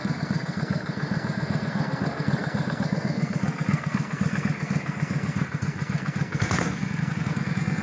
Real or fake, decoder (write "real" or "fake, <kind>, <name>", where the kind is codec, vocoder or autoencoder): fake, codec, SNAC